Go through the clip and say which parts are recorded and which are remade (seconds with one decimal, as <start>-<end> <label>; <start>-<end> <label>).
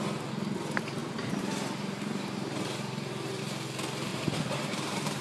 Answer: 0.0-1.0 recorded; 1.0-3.4 remade; 3.4-4.1 recorded; 4.1-5.2 remade